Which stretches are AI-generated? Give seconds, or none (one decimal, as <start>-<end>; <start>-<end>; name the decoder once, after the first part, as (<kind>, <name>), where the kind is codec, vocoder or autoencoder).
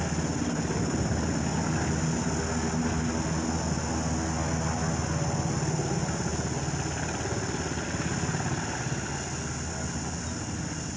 none